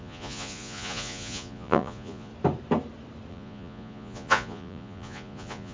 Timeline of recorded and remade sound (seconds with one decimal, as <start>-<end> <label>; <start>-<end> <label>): 0.0-2.3 remade; 2.3-3.3 recorded; 3.3-5.7 remade

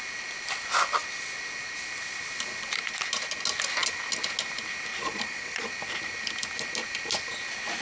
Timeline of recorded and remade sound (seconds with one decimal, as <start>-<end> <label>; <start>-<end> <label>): 0.0-4.9 recorded; 4.9-5.7 remade; 5.7-7.8 recorded

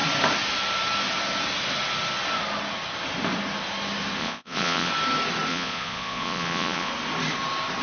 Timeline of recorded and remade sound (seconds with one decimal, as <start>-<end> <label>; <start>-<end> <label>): 0.0-4.2 recorded; 4.2-4.9 remade; 4.9-5.5 recorded; 5.5-6.9 remade; 6.9-7.8 recorded

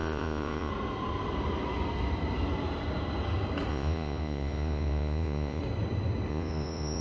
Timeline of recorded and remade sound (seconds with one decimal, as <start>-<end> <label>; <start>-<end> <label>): 0.0-0.7 remade; 0.7-3.7 recorded; 3.7-5.6 remade; 5.6-6.3 recorded; 6.3-7.0 remade

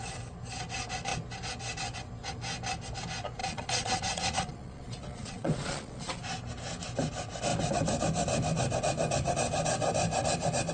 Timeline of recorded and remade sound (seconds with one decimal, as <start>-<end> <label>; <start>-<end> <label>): 0.0-3.4 recorded; 3.4-6.2 remade; 6.2-10.7 recorded

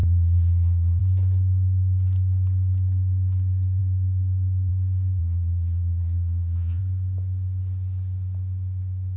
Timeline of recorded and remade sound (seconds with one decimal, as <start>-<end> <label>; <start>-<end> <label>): 0.0-1.0 remade; 1.0-5.2 recorded; 5.2-6.8 remade; 6.8-9.2 recorded

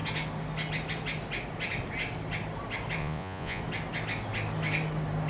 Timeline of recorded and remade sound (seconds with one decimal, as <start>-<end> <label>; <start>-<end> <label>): 0.0-3.0 recorded; 3.0-3.6 remade; 3.6-5.3 recorded